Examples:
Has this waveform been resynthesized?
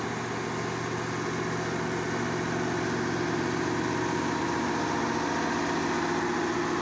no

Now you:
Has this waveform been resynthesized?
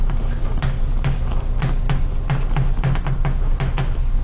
no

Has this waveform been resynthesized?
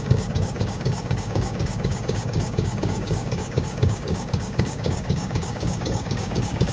yes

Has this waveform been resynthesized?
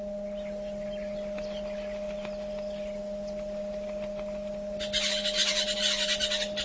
no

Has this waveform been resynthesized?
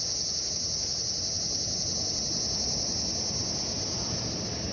no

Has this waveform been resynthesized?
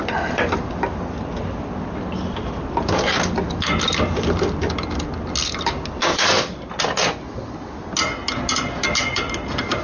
no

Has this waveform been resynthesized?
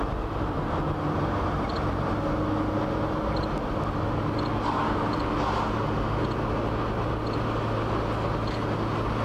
no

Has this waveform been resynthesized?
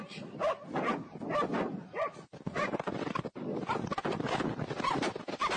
no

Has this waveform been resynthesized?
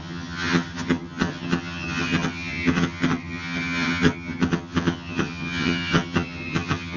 yes